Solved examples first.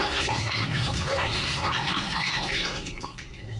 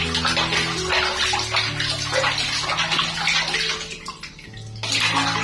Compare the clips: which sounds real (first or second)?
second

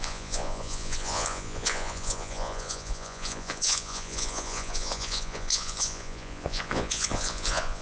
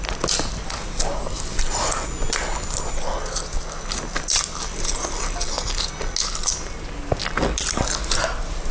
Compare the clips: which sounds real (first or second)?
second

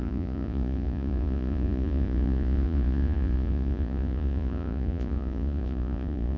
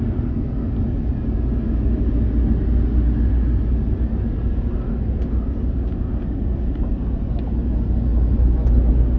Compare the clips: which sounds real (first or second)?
second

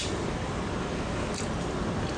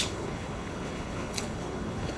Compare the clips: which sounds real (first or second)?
first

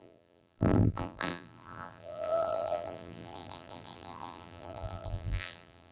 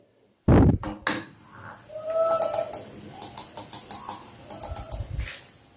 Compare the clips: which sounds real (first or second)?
second